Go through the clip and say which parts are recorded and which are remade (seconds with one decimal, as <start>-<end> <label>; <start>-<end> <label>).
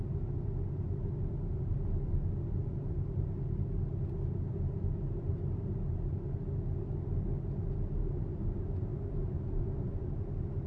0.0-10.7 recorded